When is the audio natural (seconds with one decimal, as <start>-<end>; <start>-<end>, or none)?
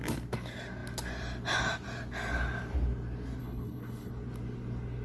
0.0-3.4; 4.1-5.0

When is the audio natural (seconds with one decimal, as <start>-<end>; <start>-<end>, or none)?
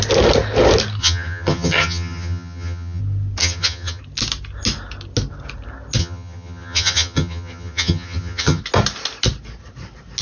0.0-1.0; 3.0-3.4; 4.0-6.0; 8.6-10.2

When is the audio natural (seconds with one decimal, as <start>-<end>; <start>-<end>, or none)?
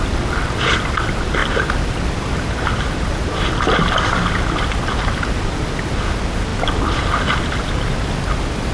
0.0-8.7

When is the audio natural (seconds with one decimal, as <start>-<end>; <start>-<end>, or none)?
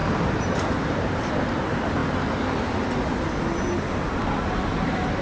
1.3-5.2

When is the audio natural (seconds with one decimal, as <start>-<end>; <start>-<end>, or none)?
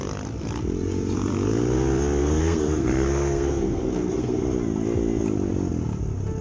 0.0-2.2; 4.4-6.4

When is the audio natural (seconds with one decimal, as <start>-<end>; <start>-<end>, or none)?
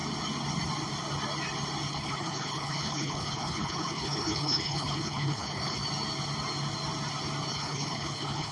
0.0-1.9; 5.8-7.5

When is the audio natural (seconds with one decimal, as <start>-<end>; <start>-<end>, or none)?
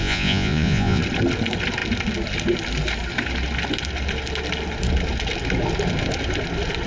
1.0-6.9